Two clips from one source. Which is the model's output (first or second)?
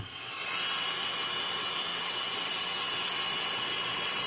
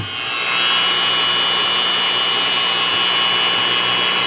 first